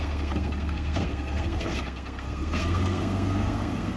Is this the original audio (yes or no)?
no